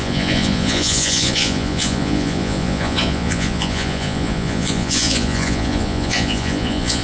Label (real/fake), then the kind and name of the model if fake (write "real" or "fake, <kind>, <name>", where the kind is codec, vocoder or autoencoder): fake, vocoder, Vocos